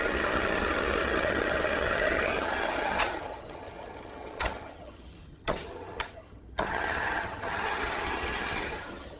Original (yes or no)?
no